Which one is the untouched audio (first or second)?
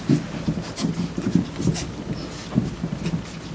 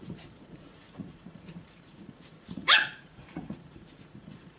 first